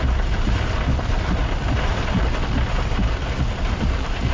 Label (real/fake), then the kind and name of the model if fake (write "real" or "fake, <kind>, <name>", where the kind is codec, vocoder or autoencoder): fake, vocoder, BigVGAN v2